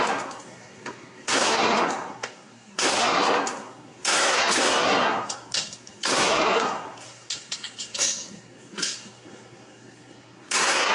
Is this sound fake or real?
fake